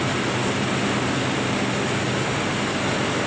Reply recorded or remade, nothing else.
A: recorded